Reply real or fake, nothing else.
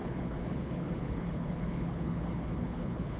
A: fake